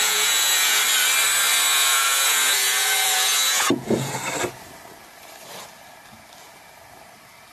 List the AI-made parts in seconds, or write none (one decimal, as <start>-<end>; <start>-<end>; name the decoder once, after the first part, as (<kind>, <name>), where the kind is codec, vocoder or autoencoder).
0.0-0.8 (vocoder, Vocos); 1.7-4.1